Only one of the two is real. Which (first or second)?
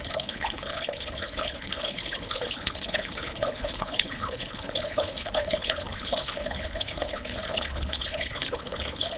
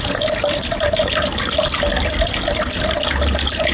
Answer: second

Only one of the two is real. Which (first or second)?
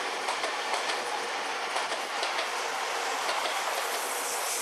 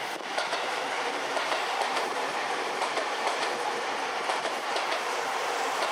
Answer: first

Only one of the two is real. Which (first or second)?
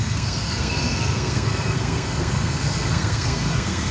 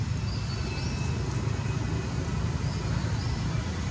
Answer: second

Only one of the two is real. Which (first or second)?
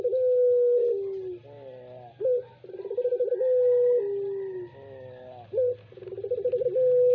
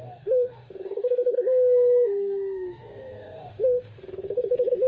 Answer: first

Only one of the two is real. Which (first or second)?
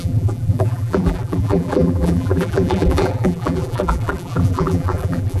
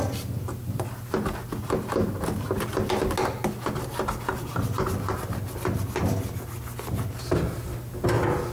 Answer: second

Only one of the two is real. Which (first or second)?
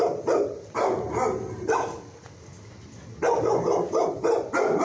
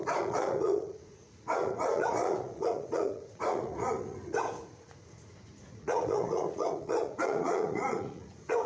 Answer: first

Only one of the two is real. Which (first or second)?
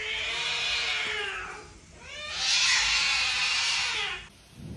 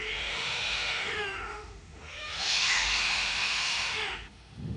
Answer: first